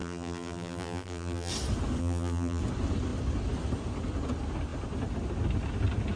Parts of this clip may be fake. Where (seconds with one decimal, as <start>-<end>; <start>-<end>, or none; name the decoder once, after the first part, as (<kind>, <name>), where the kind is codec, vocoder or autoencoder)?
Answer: 0.0-1.5 (vocoder, BigVGAN v2); 2.0-2.6